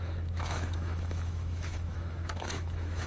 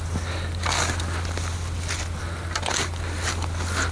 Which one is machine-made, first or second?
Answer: first